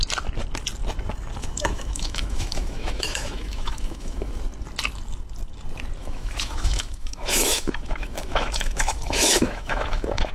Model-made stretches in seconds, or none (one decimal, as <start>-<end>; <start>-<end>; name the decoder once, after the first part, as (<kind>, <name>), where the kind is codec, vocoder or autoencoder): 1.4-4.3 (autoencoder, DAC-VAE); 6.0-10.3